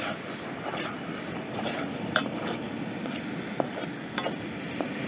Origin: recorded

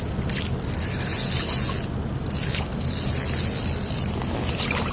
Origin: recorded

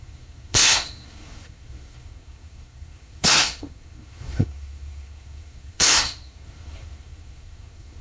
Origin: remade